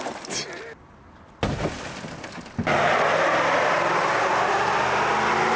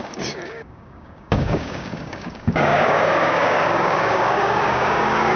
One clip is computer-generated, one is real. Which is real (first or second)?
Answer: first